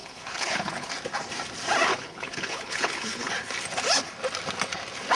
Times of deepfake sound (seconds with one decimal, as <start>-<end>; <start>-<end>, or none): 0.0-0.9; 1.9-3.3